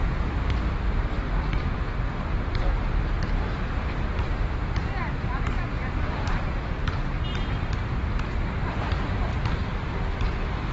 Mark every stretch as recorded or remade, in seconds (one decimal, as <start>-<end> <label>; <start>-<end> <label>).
0.0-9.3 remade; 9.3-10.7 recorded